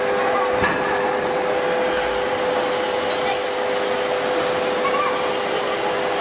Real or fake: real